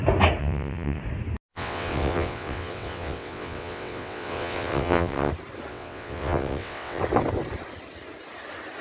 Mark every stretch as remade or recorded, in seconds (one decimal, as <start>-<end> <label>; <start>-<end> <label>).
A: 0.0-0.4 recorded; 0.4-1.0 remade; 1.0-1.5 recorded; 1.5-5.3 remade; 5.3-5.7 recorded; 5.7-7.0 remade; 7.0-8.8 recorded